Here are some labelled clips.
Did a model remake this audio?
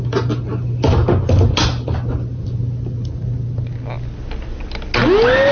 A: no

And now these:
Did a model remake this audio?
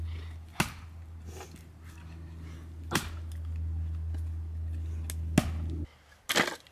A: no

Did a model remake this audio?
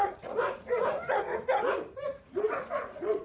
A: yes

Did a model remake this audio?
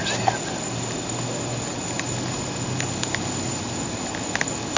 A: no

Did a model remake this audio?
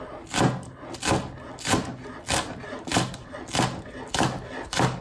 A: no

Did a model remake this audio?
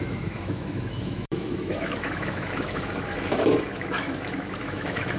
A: yes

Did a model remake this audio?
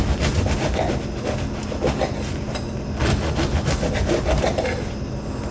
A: no